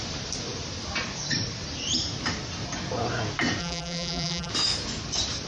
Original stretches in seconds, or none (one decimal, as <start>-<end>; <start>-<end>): 0.0-3.6; 4.5-5.5